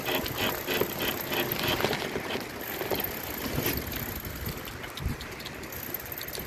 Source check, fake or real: real